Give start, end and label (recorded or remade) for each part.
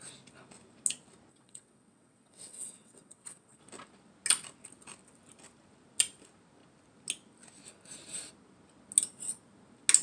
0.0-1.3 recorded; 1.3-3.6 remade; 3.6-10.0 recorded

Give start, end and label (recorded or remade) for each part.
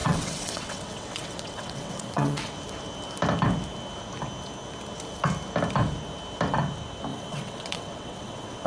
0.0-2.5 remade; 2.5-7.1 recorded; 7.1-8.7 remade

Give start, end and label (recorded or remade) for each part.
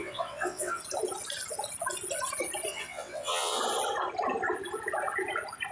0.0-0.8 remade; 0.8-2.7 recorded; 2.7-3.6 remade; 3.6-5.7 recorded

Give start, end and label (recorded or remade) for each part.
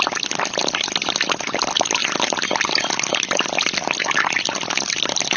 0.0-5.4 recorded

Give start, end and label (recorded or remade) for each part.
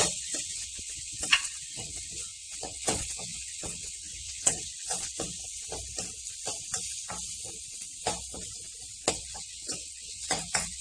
0.0-5.4 remade; 5.4-9.1 recorded; 9.1-10.8 remade